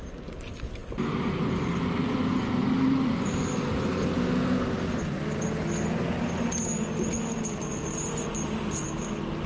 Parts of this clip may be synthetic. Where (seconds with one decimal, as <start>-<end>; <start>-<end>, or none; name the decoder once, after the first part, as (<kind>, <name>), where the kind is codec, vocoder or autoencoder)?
none